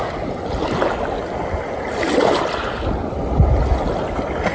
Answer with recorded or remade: recorded